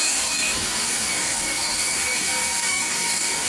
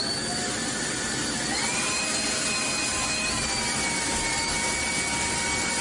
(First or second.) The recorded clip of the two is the second